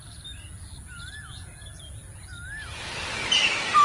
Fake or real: real